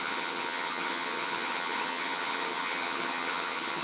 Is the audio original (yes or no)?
no